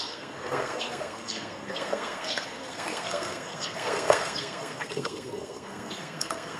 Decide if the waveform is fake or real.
fake